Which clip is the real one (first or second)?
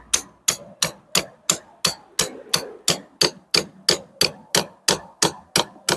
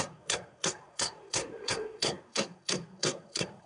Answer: first